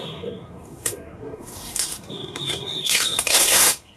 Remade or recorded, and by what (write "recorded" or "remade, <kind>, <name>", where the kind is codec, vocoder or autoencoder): remade, codec, SNAC